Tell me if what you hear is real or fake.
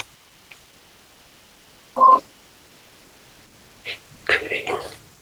real